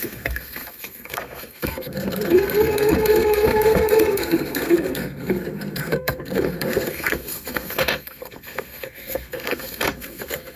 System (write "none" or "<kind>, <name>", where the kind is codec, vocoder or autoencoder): codec, SNAC